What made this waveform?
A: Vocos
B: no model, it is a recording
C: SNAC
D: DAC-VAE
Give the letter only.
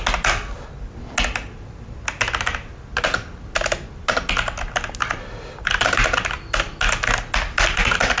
B